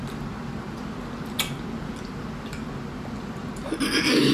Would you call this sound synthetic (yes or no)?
no